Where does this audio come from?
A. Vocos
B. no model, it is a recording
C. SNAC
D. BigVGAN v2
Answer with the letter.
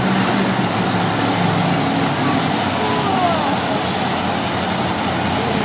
B